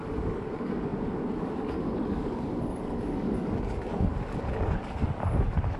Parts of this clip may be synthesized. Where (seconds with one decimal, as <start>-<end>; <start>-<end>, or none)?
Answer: 0.0-5.8